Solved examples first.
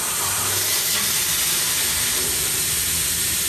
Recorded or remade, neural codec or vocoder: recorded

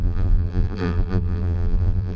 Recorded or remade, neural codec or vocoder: remade, vocoder, BigVGAN v2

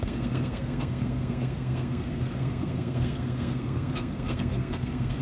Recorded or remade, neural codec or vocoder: remade, codec, SNAC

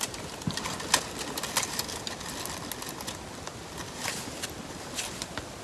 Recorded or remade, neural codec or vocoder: recorded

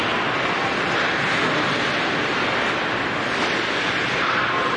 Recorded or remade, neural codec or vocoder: recorded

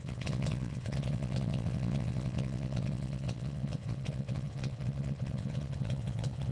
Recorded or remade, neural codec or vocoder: remade, vocoder, WaveNeXt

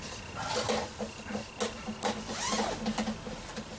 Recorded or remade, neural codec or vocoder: recorded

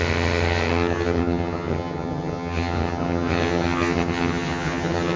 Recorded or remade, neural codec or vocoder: remade, vocoder, HiFi-GAN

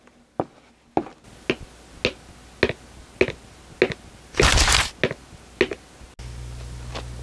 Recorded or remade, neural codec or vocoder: recorded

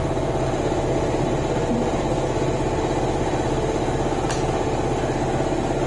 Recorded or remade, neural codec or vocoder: recorded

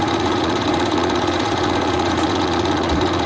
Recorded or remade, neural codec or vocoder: remade, vocoder, Vocos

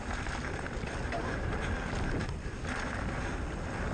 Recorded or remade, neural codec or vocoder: recorded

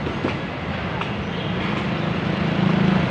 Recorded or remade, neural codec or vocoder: recorded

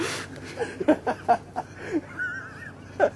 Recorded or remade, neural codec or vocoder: recorded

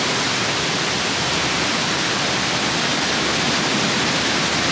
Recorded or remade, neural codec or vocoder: recorded